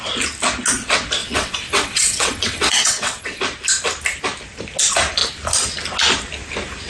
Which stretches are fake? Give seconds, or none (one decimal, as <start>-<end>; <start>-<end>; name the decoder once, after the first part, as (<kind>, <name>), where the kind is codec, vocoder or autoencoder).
1.2-3.4 (vocoder, WaveNeXt)